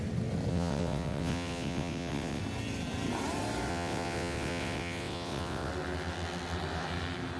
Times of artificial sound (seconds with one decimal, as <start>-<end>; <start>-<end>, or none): 0.5-2.4; 3.7-5.7